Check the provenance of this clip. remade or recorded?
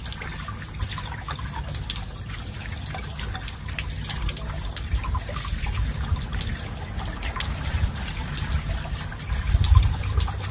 recorded